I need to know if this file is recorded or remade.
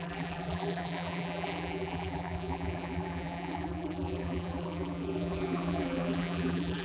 remade